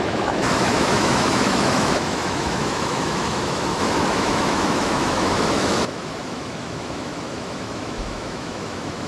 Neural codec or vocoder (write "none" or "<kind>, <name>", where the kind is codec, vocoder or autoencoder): autoencoder, DAC-VAE